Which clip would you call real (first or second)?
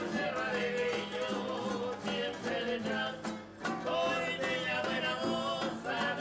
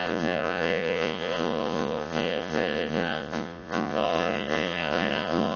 first